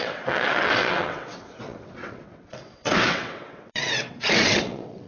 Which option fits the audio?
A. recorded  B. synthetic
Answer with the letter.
B